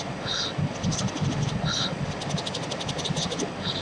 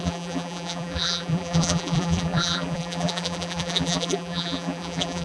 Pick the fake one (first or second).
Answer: second